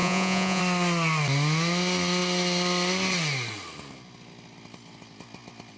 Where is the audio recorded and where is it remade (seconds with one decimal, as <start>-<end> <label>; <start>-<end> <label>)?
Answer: 0.0-0.6 remade; 0.6-5.8 recorded